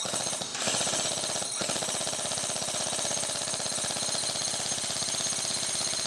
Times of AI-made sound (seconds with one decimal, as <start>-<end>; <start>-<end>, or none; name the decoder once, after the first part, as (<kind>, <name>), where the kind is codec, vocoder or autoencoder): none